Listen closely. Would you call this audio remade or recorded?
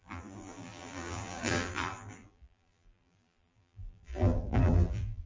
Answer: remade